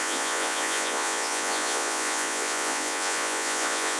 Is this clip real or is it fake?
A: fake